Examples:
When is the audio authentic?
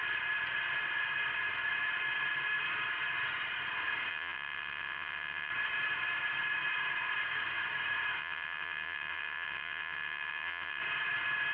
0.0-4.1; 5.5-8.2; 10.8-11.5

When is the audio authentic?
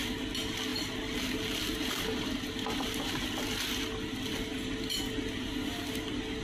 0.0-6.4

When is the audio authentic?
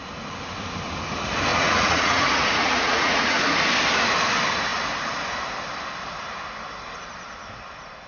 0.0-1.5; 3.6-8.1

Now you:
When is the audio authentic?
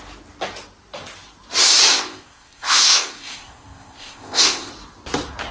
0.0-1.9; 4.7-5.5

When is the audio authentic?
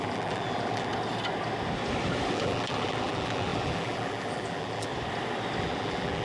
0.9-2.3; 4.9-5.6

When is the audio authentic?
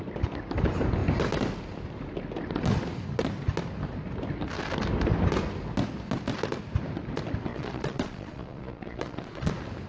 0.0-7.5; 9.5-9.9